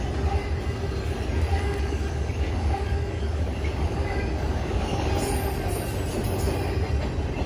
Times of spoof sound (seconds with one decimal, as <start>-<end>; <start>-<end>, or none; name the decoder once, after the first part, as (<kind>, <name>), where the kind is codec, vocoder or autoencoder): 1.5-5.1 (codec, DAC)